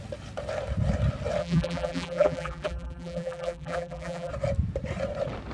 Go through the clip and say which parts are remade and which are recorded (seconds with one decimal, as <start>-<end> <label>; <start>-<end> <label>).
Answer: 0.0-1.4 recorded; 1.4-4.3 remade; 4.3-5.5 recorded